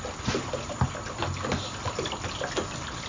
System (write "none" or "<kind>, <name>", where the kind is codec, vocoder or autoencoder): none